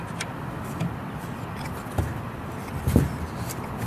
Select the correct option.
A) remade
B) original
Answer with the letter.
B